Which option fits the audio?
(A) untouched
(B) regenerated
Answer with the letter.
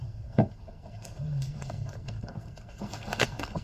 B